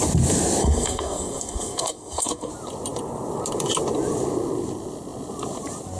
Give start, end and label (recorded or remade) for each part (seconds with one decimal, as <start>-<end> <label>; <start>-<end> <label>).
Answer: 0.0-0.6 recorded; 0.6-2.5 remade; 2.5-6.0 recorded